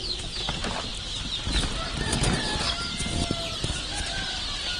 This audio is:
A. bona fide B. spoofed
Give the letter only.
A